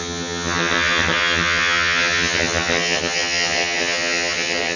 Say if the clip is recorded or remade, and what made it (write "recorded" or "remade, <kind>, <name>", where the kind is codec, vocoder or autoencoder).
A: remade, vocoder, HiFi-GAN